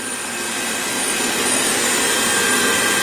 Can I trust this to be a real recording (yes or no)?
no